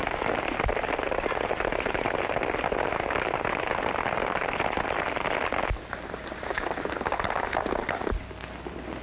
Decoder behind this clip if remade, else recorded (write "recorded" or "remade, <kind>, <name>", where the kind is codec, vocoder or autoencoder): recorded